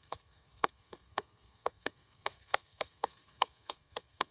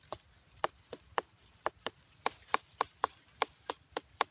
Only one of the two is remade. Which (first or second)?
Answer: first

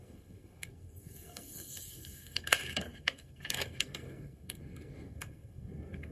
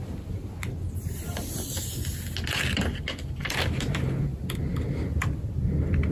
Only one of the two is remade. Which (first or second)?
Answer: first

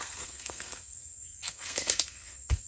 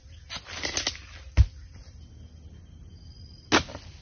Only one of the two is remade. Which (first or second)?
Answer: first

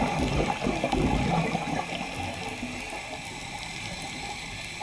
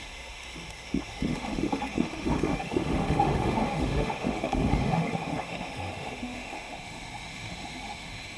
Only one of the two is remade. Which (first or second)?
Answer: second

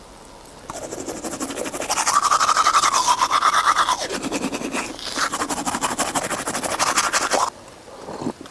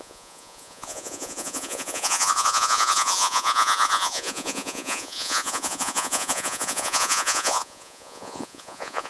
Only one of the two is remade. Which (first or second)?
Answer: second